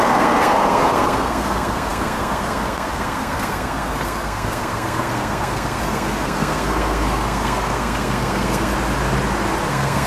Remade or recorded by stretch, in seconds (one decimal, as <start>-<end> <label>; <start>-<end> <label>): 0.0-8.7 remade; 8.7-9.7 recorded; 9.7-10.1 remade

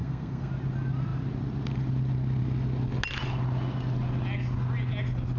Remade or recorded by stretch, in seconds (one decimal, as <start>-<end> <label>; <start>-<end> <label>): 0.0-0.5 remade; 0.5-5.4 recorded

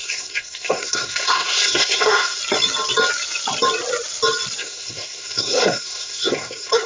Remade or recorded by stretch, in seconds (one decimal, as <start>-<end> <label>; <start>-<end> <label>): 0.0-2.4 remade; 2.4-4.6 recorded; 4.6-6.9 remade

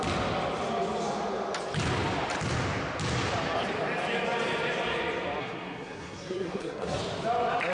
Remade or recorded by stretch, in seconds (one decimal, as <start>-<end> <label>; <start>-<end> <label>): 0.0-5.4 recorded; 5.4-7.0 remade; 7.0-7.7 recorded

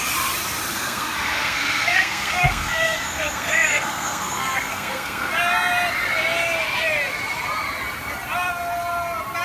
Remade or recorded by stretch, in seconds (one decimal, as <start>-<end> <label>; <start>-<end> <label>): 0.0-0.7 recorded; 0.7-5.3 remade; 5.3-9.4 recorded